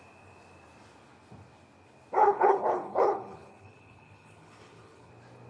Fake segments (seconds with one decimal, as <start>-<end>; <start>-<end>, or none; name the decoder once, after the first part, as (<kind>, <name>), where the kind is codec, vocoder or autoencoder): 2.2-5.1 (codec, HILCodec)